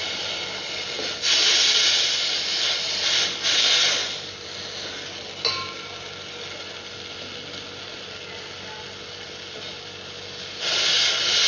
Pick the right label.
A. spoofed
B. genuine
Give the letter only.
B